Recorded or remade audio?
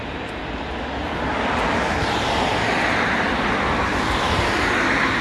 recorded